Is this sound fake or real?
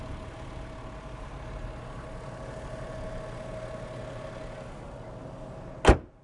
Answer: real